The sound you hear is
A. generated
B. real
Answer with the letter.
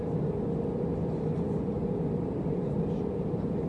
B